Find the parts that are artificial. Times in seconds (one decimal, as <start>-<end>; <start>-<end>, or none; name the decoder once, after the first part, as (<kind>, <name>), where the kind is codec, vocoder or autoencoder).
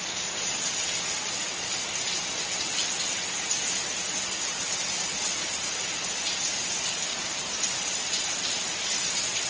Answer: 5.1-6.0 (vocoder, BigVGAN v2); 7.1-9.0